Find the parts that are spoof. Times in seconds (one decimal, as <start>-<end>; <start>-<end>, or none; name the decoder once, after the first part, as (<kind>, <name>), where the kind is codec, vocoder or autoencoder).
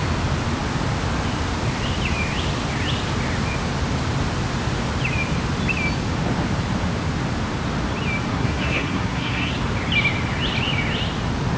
8.3-9.5 (codec, SNAC)